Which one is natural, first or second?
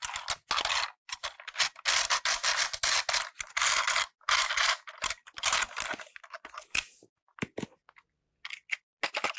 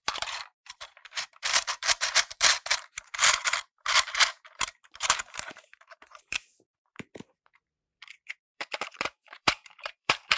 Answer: first